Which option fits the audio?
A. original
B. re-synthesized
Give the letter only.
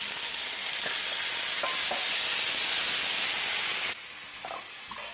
A